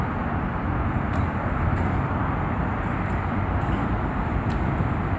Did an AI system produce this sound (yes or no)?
no